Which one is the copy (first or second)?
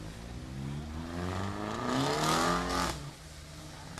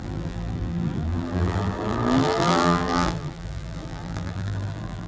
second